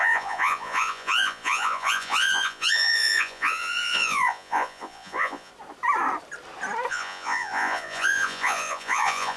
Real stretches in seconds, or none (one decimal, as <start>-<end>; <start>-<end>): 5.5-6.9